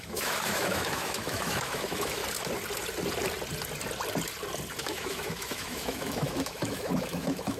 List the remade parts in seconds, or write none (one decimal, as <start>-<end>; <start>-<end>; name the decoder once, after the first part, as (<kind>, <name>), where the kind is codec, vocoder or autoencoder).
0.0-2.2 (autoencoder, DAC-VAE); 4.8-7.6